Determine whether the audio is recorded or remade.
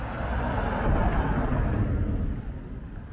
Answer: recorded